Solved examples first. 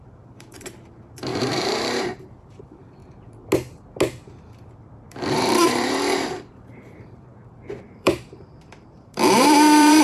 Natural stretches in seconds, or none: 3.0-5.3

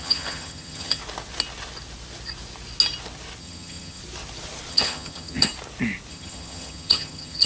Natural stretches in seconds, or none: 1.0-3.4; 4.0-4.7; 5.5-6.1

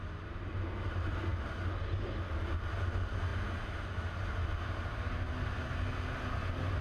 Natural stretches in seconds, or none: 0.0-6.8

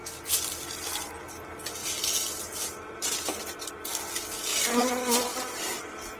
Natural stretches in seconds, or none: 1.0-6.2